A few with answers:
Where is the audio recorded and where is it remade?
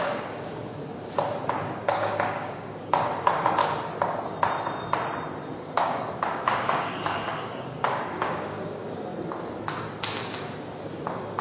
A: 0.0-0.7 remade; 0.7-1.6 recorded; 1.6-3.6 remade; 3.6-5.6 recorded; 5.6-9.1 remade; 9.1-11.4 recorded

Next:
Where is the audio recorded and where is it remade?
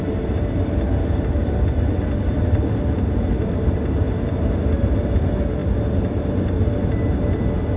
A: 0.0-7.8 recorded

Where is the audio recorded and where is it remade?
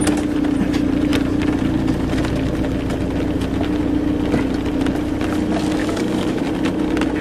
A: 0.0-5.8 recorded; 5.8-6.4 remade; 6.4-7.2 recorded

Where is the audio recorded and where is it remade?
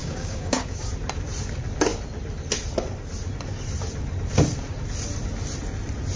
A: 0.0-0.9 remade; 0.9-6.2 recorded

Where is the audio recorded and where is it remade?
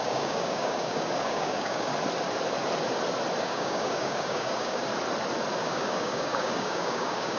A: 0.0-1.9 remade; 1.9-3.4 recorded; 3.4-4.9 remade; 4.9-5.6 recorded; 5.6-7.4 remade